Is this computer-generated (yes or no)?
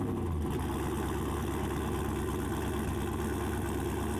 no